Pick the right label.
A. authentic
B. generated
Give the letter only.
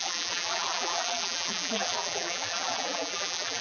B